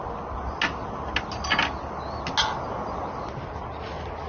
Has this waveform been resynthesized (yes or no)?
no